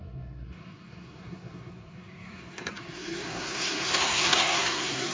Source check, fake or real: fake